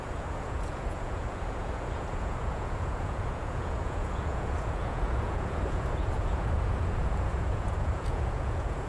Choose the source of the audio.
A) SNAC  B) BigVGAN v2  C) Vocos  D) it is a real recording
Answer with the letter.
C